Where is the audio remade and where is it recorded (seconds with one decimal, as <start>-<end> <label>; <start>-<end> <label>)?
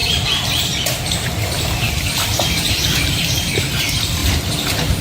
0.0-2.7 remade; 2.7-4.2 recorded; 4.2-5.0 remade